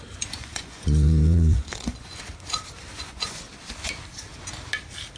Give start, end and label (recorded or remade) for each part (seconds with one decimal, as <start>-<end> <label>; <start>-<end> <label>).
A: 0.0-0.4 recorded; 0.4-2.2 remade; 2.2-2.8 recorded; 2.8-3.4 remade; 3.4-5.2 recorded